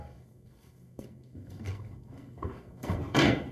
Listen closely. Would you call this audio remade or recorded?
remade